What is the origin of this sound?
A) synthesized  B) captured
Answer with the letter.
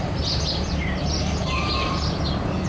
B